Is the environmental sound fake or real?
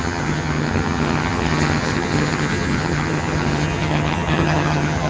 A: fake